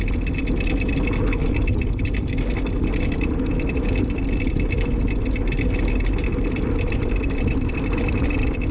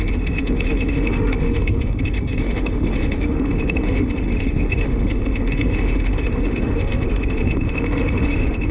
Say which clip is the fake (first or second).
second